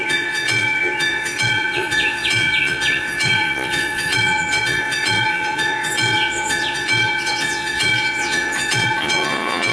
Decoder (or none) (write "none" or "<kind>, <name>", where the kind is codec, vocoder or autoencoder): vocoder, Vocos